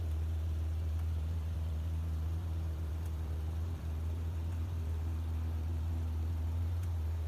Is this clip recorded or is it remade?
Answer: remade